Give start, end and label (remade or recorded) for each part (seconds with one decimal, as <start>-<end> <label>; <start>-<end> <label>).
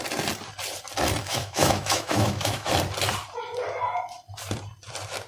0.0-1.2 recorded; 1.2-2.7 remade; 2.7-5.3 recorded